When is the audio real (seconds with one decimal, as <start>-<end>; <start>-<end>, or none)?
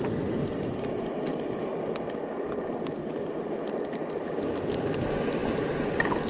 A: 0.0-6.3